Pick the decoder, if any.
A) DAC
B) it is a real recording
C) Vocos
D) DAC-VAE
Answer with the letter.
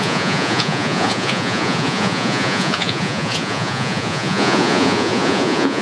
C